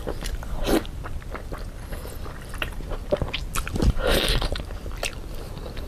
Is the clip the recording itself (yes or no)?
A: no